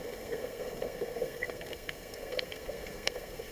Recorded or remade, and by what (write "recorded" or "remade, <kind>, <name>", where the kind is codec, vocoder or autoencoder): remade, codec, SNAC